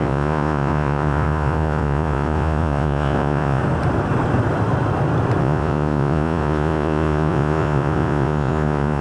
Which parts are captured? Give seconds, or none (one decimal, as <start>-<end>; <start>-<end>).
3.6-5.4